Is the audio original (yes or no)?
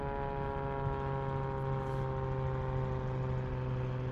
yes